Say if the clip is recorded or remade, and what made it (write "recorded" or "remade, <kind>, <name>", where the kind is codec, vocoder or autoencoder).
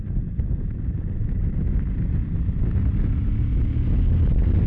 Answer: recorded